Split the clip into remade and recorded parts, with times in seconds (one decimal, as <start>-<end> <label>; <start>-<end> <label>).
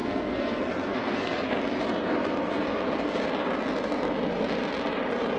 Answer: 0.0-1.6 remade; 1.6-5.4 recorded